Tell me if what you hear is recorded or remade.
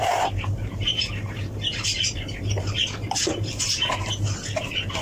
remade